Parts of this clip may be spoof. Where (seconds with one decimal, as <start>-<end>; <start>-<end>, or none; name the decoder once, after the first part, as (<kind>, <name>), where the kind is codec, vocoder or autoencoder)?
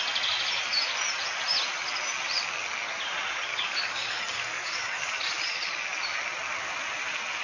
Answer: 3.5-5.0 (codec, DAC)